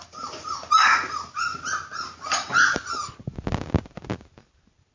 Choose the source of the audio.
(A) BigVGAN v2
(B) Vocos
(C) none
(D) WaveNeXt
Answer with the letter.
C